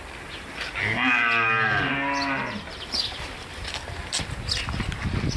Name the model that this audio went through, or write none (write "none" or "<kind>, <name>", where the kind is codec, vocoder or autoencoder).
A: none